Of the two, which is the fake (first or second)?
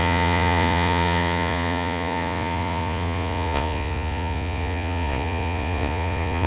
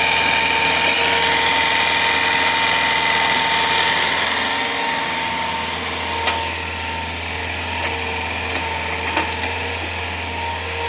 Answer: first